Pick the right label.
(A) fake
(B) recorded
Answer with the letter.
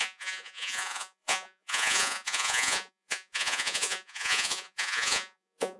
A